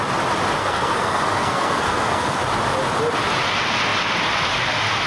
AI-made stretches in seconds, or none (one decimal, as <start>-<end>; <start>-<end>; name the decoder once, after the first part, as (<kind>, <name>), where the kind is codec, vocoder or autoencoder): 0.6-2.4 (codec, SNAC)